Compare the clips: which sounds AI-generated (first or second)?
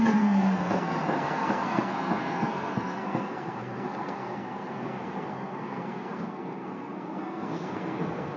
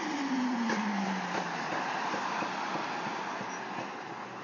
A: first